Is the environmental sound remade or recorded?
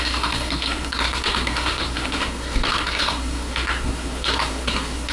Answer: remade